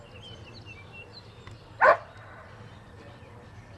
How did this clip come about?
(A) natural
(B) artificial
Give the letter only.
A